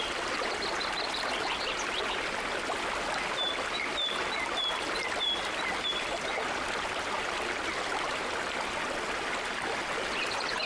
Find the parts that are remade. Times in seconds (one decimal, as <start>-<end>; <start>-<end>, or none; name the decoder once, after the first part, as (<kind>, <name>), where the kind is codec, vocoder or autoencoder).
none